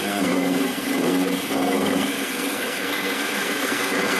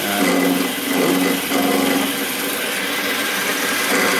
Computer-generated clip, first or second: first